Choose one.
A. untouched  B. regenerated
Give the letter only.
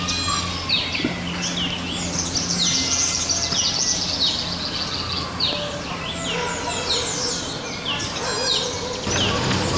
A